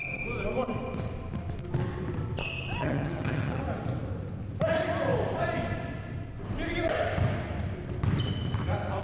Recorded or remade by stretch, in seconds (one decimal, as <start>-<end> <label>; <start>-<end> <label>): 0.0-2.8 recorded; 2.8-3.6 remade; 3.6-9.0 recorded